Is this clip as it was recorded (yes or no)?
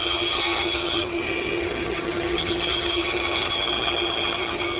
no